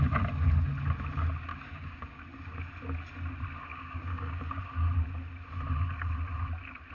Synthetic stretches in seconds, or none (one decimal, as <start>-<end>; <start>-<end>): 1.5-2.2; 3.7-4.6